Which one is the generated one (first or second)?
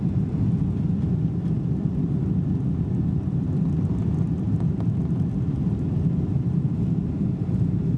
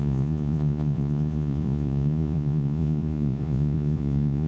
second